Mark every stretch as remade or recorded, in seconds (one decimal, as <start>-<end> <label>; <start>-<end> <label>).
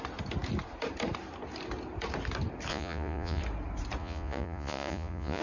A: 0.0-2.7 recorded; 2.7-3.4 remade; 3.4-4.0 recorded; 4.0-5.4 remade